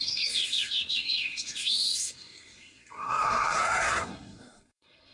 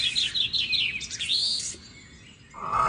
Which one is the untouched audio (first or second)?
second